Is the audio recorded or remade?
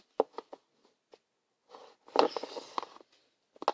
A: recorded